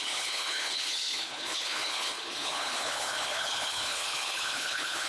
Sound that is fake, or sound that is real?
fake